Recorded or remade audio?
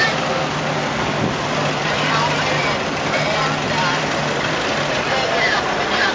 recorded